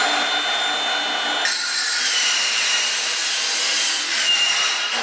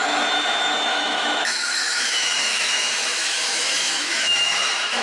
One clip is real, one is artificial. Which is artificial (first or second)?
second